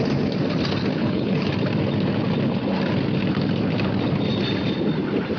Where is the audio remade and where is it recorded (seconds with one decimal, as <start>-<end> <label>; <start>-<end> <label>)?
0.0-1.0 recorded; 1.0-1.5 remade; 1.5-5.4 recorded